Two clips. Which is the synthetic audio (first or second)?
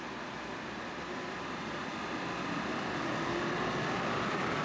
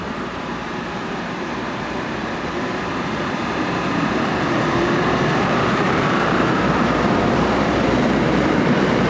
second